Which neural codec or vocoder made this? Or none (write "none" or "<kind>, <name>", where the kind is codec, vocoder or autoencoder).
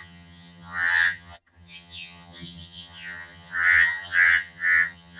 vocoder, HiFi-GAN